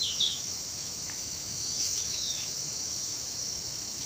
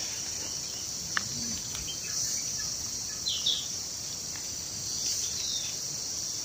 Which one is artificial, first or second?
first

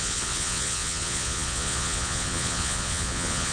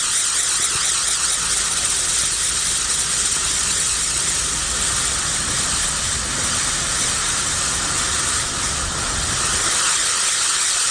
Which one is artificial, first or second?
first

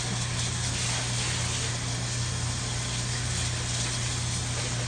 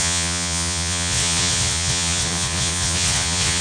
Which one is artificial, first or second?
second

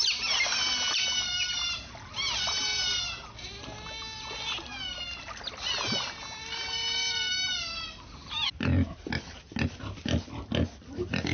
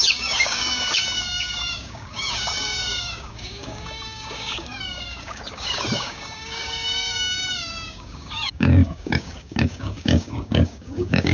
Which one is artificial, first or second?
second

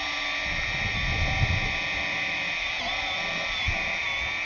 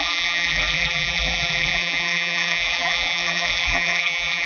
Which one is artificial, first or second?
second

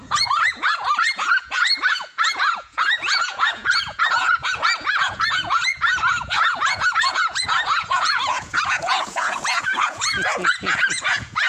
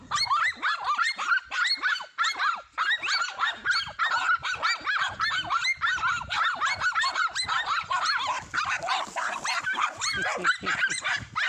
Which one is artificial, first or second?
first